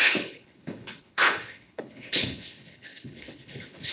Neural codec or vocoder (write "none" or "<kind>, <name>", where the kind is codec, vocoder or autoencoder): codec, HILCodec